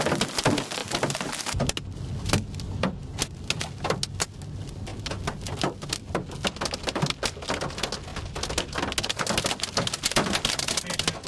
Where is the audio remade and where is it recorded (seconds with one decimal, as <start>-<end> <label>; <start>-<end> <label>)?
0.0-11.3 recorded